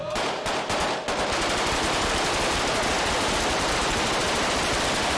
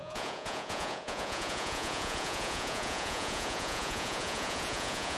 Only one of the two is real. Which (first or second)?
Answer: first